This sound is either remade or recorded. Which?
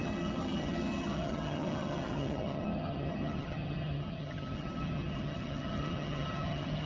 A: remade